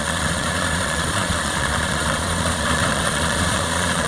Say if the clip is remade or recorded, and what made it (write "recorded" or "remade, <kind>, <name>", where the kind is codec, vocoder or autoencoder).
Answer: remade, vocoder, Vocos